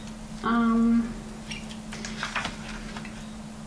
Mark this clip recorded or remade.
recorded